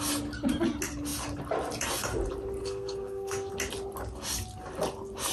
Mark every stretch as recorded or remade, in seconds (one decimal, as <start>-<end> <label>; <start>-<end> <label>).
0.0-2.6 recorded; 2.6-3.5 remade; 3.5-5.3 recorded